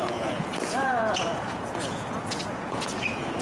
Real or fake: fake